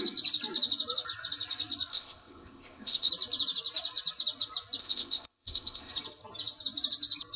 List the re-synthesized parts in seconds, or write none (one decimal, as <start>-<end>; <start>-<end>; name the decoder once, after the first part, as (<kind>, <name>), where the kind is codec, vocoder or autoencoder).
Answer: 1.9-3.1 (codec, ZipCodec); 4.8-5.9